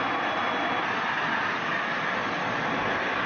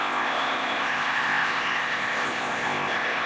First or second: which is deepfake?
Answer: second